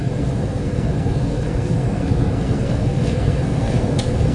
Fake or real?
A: fake